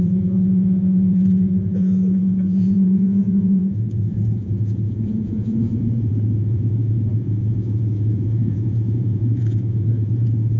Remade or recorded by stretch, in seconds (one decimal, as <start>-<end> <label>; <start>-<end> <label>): 0.0-10.6 remade